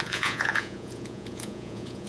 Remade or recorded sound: remade